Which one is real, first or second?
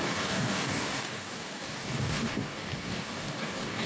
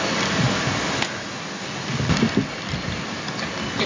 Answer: second